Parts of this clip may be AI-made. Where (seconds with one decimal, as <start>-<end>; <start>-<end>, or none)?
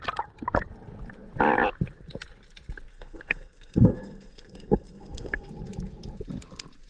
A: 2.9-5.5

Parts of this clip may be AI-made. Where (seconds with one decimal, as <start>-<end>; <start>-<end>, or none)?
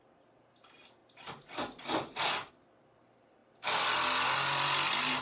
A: none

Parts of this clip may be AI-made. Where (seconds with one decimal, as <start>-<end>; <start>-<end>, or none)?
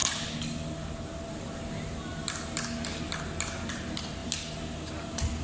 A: none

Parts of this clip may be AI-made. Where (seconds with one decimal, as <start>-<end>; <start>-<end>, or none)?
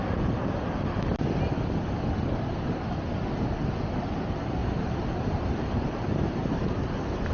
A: 4.6-7.3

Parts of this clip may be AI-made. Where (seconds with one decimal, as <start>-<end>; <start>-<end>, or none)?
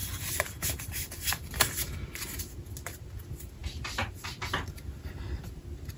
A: 0.0-1.7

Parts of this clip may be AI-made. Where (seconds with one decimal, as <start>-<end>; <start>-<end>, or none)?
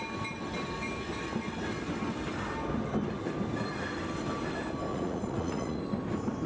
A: 4.9-5.8